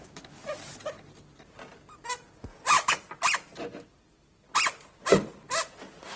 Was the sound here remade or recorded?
recorded